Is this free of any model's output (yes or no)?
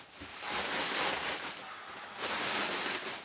yes